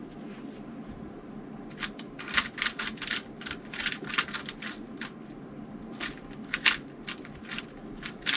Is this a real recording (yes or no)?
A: yes